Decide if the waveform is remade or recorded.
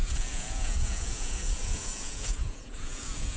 remade